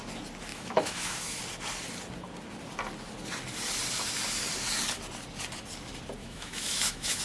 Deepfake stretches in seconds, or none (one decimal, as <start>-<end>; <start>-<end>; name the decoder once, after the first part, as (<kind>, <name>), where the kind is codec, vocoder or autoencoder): 0.5-1.4 (autoencoder, DAC-VAE); 6.2-7.2